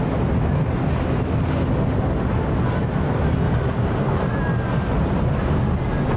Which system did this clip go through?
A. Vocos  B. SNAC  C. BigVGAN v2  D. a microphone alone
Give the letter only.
D